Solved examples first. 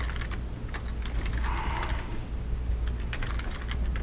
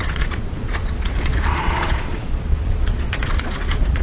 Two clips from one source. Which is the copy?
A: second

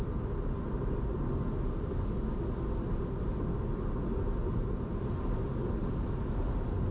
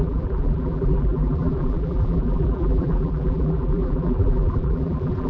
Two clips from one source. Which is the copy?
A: second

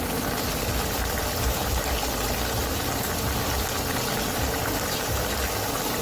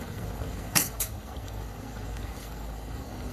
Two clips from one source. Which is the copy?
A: second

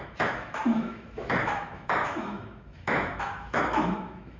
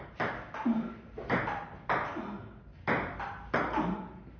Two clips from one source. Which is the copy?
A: first